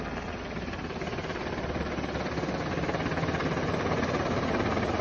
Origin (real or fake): real